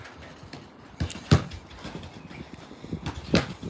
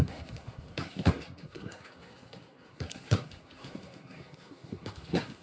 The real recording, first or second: first